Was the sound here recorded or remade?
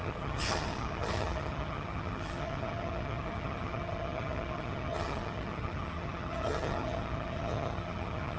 remade